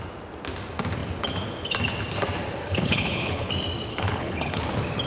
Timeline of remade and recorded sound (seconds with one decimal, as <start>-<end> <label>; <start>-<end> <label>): 0.0-2.6 recorded; 2.6-3.5 remade; 3.5-3.9 recorded; 3.9-4.6 remade; 4.6-5.1 recorded